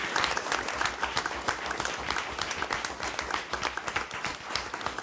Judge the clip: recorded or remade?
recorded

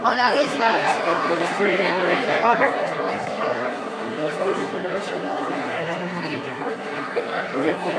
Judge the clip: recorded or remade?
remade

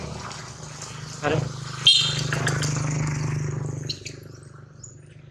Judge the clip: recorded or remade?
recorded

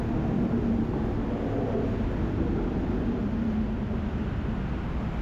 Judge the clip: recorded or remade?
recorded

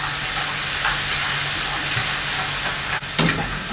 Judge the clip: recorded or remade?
recorded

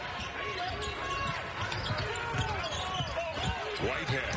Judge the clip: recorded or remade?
recorded